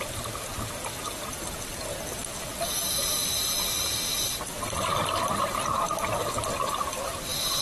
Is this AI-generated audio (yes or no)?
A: no